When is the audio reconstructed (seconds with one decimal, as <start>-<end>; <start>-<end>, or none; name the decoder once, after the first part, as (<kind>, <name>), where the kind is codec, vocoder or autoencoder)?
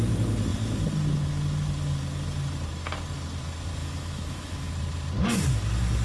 3.8-4.7 (autoencoder, DAC-VAE)